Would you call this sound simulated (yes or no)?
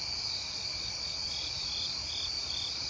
no